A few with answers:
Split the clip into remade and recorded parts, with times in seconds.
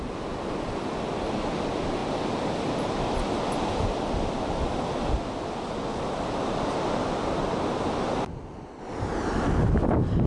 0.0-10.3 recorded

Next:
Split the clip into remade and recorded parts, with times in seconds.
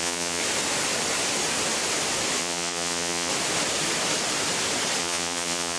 0.0-0.4 remade; 0.4-2.4 recorded; 2.4-3.3 remade; 3.3-5.0 recorded; 5.0-5.8 remade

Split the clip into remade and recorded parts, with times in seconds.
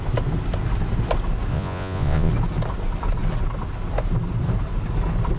0.0-1.5 recorded; 1.5-2.3 remade; 2.3-5.4 recorded